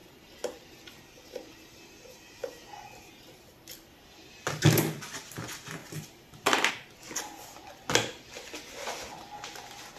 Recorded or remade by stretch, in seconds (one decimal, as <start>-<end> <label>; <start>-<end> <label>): 0.0-4.3 remade; 4.3-5.8 recorded; 5.8-6.7 remade; 6.7-10.0 recorded